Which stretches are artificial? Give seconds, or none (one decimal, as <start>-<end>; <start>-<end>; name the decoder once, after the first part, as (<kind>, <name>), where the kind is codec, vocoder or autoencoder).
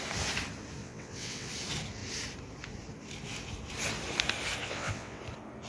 0.8-1.5 (vocoder, WaveNeXt); 4.6-5.2